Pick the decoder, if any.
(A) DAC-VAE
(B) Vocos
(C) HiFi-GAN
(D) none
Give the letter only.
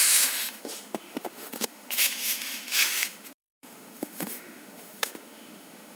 A